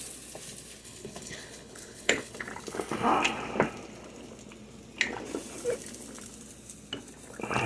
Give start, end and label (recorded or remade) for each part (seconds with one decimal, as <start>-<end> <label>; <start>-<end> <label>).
0.0-0.8 recorded; 0.8-2.3 remade; 2.3-7.7 recorded